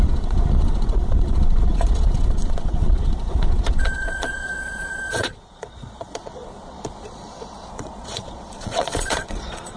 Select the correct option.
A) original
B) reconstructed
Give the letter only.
B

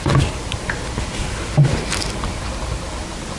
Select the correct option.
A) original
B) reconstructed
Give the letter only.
A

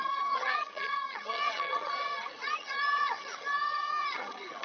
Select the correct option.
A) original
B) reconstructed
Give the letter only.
B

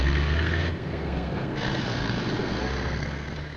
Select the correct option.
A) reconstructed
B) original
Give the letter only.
A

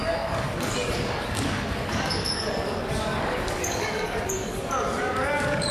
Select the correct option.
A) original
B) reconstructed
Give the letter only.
B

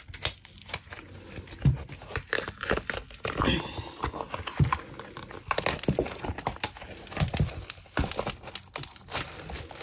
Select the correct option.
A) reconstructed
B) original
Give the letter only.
B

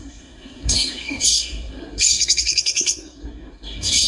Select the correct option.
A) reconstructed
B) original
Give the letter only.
A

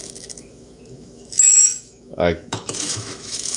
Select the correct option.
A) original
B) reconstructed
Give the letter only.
B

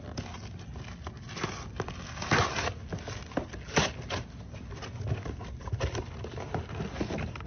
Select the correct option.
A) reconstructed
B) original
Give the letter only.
B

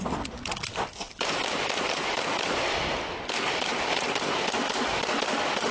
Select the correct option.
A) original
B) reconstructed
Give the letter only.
A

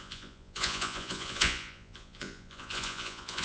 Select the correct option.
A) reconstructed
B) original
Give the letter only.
A